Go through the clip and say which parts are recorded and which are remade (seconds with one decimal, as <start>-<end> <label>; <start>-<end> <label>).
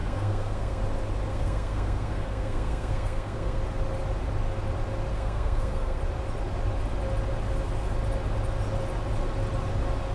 0.0-0.8 remade; 0.8-1.3 recorded; 1.3-3.6 remade; 3.6-5.1 recorded; 5.1-6.0 remade; 6.0-10.1 recorded